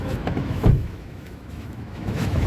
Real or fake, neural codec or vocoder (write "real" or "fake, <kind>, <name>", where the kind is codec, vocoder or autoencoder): fake, autoencoder, DAC-VAE